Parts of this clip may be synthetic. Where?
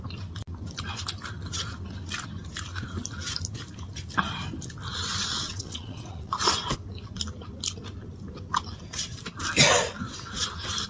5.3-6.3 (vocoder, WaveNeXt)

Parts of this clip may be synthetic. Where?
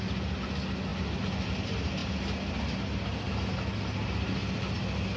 none